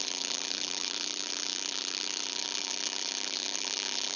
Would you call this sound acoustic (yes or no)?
no